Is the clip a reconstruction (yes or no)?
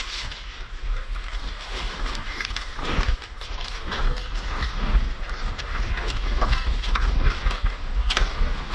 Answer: yes